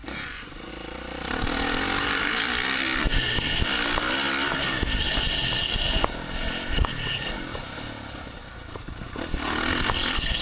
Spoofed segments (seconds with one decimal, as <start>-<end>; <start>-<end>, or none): 0.0-0.7